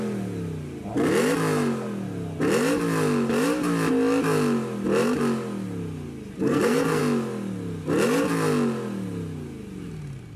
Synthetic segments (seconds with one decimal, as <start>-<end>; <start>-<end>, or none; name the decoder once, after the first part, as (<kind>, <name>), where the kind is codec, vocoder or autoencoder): 6.4-7.0 (codec, SNAC)